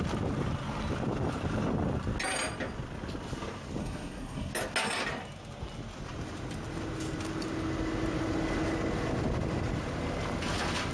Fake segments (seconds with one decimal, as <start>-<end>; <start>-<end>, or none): 3.8-4.5